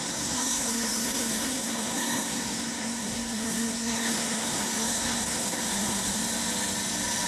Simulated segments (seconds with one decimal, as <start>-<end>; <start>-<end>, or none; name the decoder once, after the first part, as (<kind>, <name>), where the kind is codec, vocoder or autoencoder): 0.0-6.2 (codec, SNAC)